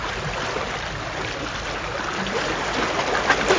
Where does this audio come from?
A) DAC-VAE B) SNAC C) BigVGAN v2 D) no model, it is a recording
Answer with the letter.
D